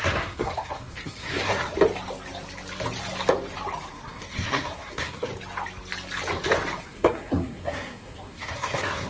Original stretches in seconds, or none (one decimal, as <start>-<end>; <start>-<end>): 1.6-3.9; 5.3-6.8